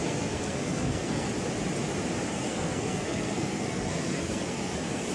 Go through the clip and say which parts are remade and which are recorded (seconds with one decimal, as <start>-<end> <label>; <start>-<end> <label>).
0.0-1.3 remade; 1.3-2.3 recorded; 2.3-5.1 remade